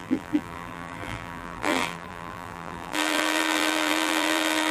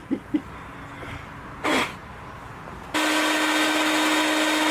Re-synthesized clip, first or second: first